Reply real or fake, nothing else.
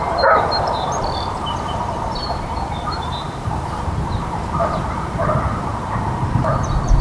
fake